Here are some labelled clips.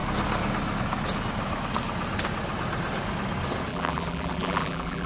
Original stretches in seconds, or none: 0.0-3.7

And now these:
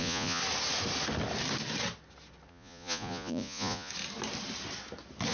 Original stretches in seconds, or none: 0.4-2.5; 3.9-5.3